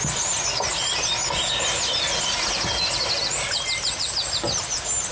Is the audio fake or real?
real